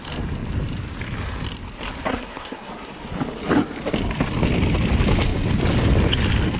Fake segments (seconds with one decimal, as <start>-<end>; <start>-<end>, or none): 2.1-2.7